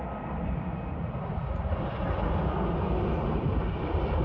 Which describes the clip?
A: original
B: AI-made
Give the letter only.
A